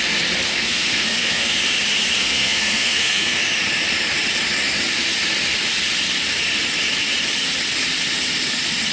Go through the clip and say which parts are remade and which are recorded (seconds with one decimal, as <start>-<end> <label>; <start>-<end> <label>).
0.0-0.5 recorded; 0.5-1.6 remade; 1.6-2.2 recorded; 2.2-3.4 remade; 3.4-8.9 recorded